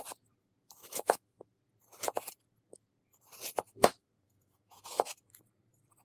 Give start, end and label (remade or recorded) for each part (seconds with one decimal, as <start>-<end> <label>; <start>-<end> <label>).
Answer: 0.0-0.6 recorded; 0.6-1.6 remade; 1.6-3.7 recorded; 3.7-5.4 remade; 5.4-6.0 recorded